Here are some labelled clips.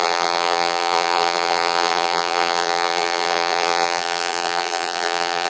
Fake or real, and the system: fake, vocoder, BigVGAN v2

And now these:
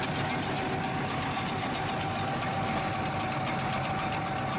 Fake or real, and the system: real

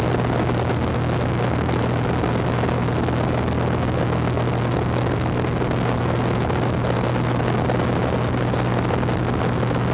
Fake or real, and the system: real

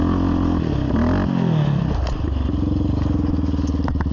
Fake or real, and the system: real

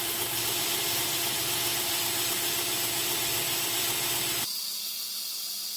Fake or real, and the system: real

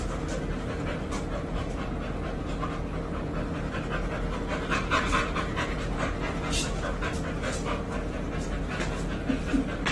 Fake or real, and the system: real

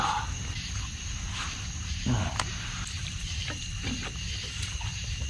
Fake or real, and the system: real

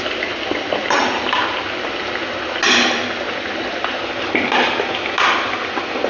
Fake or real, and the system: real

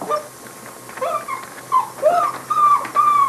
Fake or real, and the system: real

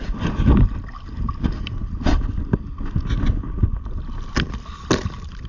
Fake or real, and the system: real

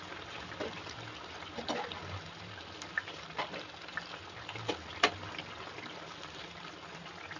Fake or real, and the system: real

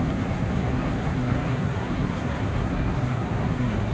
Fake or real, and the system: fake, codec, SNAC